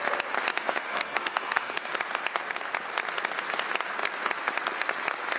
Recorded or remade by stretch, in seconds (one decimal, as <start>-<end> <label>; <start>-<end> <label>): 0.0-0.5 recorded; 0.5-1.9 remade; 1.9-5.4 recorded

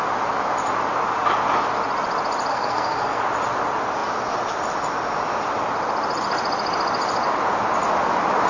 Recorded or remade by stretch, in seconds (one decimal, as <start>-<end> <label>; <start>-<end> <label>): 0.0-2.5 recorded; 2.5-3.2 remade; 3.2-8.5 recorded

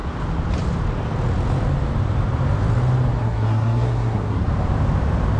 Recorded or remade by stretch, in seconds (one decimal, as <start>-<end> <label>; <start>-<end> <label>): 0.0-3.2 recorded; 3.2-4.5 remade; 4.5-5.4 recorded